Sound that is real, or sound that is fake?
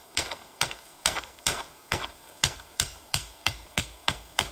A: fake